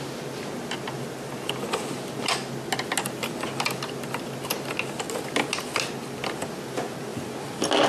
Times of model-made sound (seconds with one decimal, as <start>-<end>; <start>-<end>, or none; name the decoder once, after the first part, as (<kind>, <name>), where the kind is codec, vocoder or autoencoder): none